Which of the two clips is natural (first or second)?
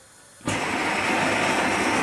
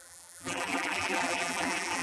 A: first